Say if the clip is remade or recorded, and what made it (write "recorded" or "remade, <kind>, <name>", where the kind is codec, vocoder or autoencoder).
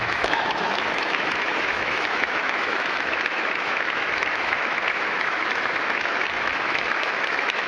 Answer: remade, autoencoder, DAC-VAE